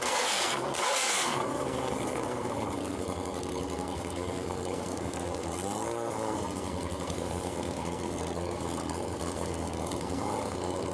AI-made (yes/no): yes